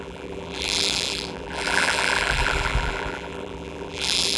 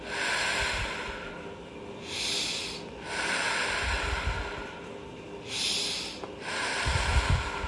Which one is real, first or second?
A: second